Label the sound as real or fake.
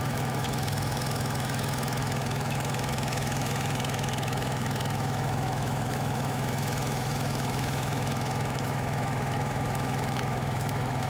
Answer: fake